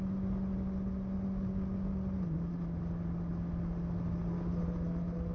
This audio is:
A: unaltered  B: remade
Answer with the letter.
A